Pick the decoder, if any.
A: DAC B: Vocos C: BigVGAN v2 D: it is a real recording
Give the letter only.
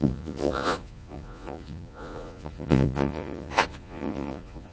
B